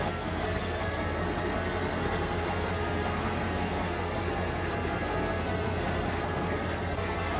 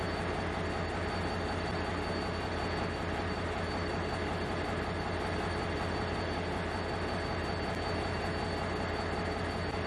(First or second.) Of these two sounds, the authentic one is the second